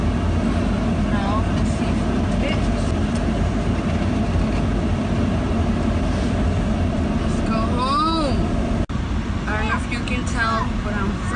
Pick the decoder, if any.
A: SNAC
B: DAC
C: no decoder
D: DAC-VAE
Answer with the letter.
C